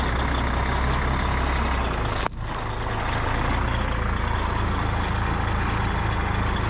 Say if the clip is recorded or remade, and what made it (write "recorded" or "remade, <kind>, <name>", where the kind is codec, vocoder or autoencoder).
recorded